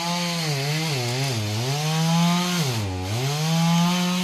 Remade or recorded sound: recorded